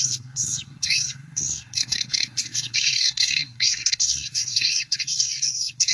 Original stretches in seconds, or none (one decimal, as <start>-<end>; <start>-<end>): none